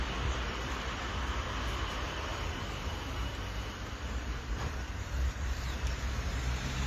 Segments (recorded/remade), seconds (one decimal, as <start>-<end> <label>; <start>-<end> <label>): 0.0-2.3 recorded; 2.3-6.4 remade; 6.4-6.9 recorded